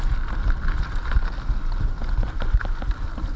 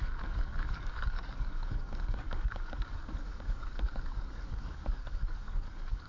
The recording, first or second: first